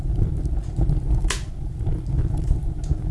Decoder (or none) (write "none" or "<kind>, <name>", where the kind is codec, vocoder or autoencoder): none